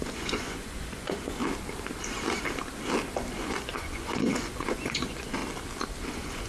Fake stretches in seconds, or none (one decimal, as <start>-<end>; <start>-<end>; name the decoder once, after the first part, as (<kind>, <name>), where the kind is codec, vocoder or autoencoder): 0.0-1.4 (vocoder, Vocos); 3.3-5.4; 6.1-6.5